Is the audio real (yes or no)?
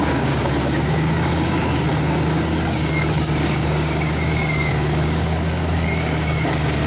no